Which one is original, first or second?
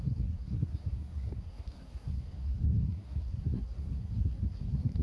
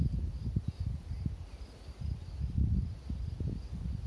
second